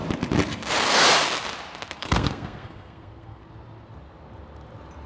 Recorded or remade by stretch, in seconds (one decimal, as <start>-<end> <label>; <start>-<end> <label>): 0.0-2.0 recorded; 2.0-3.4 remade; 3.4-5.1 recorded